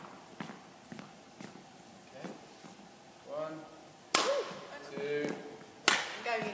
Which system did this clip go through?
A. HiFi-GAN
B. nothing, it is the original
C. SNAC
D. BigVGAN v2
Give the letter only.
B